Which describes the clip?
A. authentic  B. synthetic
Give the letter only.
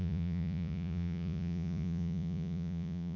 B